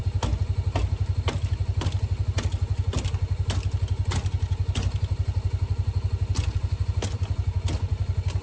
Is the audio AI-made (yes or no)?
no